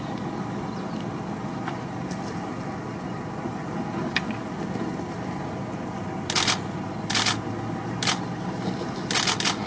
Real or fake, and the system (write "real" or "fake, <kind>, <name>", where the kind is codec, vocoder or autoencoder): real